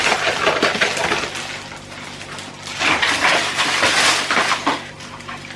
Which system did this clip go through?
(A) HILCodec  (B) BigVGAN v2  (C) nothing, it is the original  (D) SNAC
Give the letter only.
C